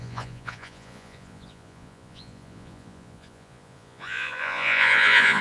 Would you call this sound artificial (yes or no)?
yes